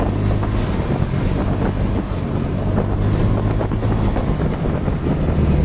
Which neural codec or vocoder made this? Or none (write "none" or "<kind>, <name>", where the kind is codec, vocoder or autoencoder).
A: none